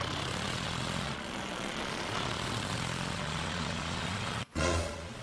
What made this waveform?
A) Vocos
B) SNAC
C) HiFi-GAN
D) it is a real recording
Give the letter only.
A